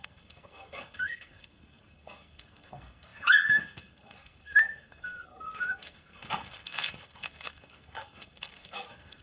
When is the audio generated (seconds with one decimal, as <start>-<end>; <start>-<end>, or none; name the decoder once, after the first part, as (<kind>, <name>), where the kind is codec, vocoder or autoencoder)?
0.0-9.2 (codec, SNAC)